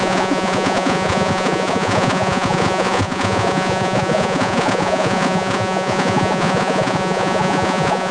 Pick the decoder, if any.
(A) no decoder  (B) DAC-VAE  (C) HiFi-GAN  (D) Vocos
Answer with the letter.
D